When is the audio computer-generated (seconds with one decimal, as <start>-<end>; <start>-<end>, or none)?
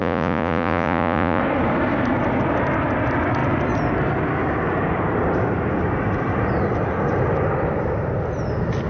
0.0-1.4